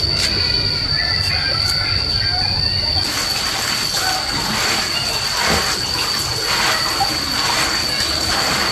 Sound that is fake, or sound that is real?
real